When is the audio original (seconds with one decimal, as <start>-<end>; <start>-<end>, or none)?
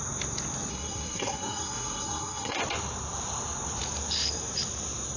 0.0-0.7; 2.6-5.2